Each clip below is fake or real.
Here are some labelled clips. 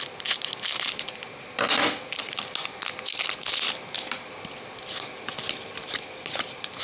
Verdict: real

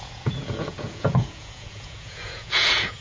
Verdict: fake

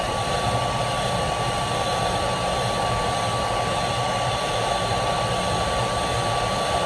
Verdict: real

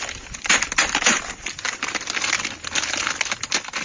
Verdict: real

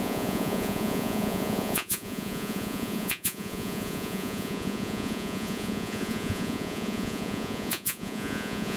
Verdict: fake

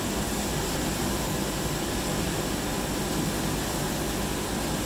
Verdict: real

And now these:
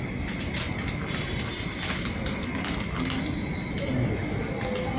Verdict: real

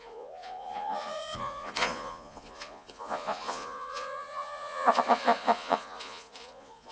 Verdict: fake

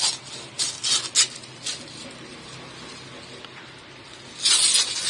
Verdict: real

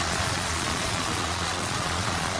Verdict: fake